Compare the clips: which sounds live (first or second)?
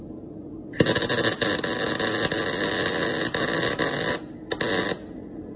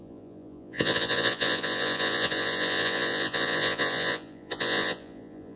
first